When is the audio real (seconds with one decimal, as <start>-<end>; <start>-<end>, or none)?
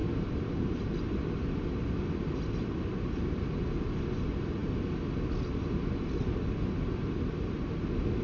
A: 1.5-8.2